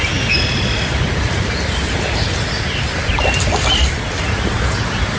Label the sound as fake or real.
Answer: real